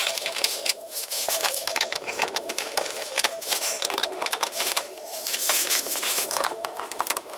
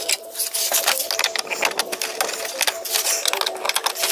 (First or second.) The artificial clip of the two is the first